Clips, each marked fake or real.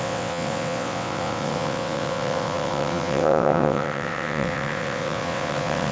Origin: fake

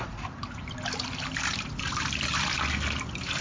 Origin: real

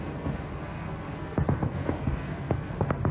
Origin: fake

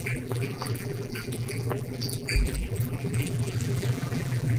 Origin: fake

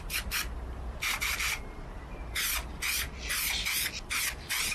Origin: real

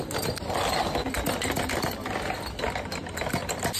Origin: real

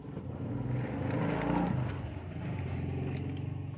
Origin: real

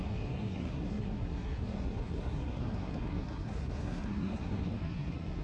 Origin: fake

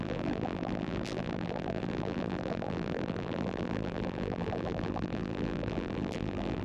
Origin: fake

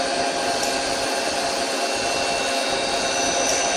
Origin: real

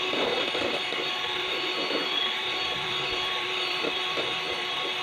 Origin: fake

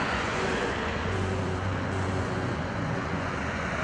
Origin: fake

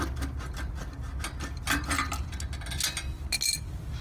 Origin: real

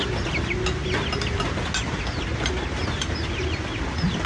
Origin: real